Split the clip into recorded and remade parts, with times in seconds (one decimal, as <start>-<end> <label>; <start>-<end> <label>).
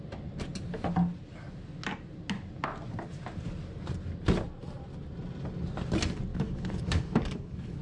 0.0-6.3 recorded; 6.3-7.8 remade